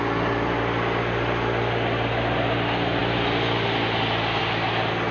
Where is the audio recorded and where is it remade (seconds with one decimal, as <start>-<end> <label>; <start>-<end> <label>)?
0.0-5.1 recorded